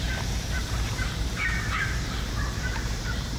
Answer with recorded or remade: remade